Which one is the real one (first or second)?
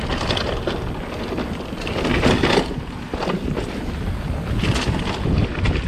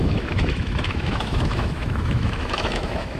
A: first